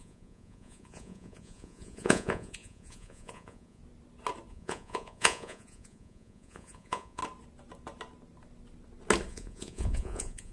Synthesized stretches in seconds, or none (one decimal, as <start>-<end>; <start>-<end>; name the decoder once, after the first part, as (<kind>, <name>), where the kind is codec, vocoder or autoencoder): 0.0-3.8 (vocoder, Vocos); 4.5-7.2; 9.3-10.5